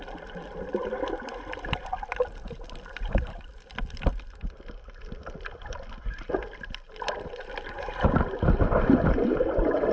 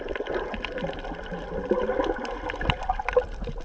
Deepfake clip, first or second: first